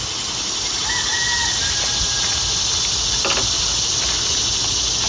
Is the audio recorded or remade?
recorded